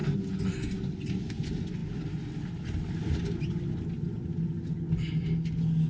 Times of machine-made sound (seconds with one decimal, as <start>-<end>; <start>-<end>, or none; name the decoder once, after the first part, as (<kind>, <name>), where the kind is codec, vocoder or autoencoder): none